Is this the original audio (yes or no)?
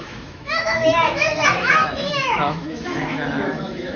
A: no